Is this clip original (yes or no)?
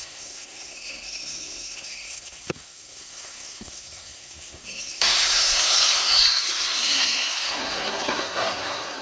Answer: no